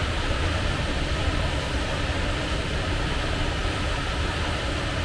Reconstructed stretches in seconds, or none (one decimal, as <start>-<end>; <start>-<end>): 0.0-2.4; 3.6-4.6